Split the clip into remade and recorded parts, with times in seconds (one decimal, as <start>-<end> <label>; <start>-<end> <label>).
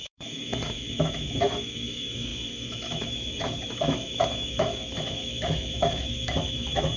0.0-7.0 remade